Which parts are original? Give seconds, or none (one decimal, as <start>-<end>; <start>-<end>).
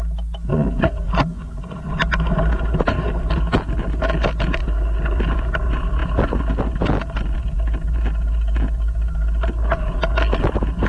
0.0-0.5; 1.9-10.9